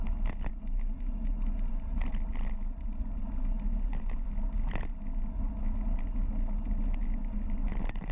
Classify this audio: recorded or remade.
recorded